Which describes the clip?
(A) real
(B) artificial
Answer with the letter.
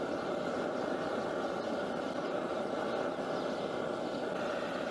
A